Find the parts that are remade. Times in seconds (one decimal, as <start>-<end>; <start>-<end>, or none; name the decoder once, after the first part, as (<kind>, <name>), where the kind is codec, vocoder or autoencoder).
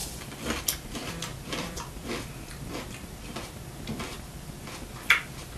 1.3-4.7 (vocoder, BigVGAN v2)